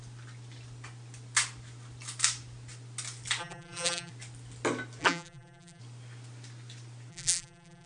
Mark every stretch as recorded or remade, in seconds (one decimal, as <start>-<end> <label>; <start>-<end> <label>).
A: 0.0-3.4 recorded; 3.4-4.1 remade; 4.1-5.0 recorded; 5.0-5.8 remade; 5.8-7.1 recorded; 7.1-7.9 remade